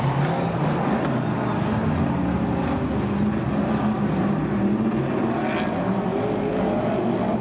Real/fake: real